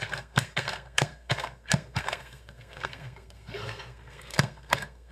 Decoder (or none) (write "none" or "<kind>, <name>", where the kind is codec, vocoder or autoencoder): codec, SNAC